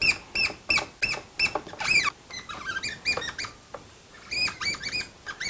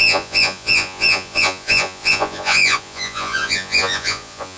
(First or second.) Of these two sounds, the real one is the first